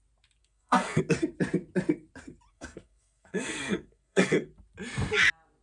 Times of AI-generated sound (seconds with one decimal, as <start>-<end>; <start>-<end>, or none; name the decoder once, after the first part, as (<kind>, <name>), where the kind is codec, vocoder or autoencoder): 0.4-1.0 (codec, SNAC); 2.5-4.5